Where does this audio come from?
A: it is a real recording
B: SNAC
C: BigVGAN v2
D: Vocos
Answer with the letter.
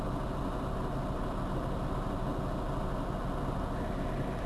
A